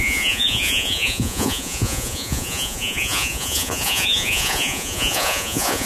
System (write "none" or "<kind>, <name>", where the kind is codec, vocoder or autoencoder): vocoder, Vocos